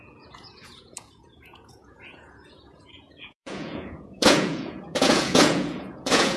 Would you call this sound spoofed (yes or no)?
yes